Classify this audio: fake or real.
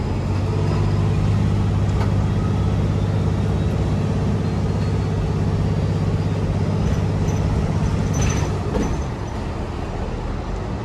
real